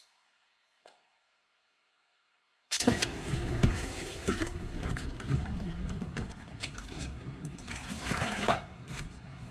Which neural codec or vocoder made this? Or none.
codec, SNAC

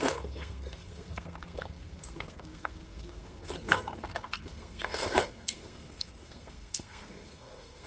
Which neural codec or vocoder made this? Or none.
codec, SNAC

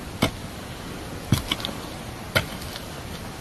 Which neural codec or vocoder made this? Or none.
none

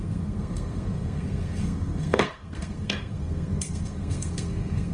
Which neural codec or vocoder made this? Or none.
codec, SNAC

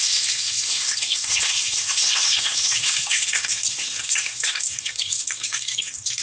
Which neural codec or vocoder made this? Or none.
codec, SNAC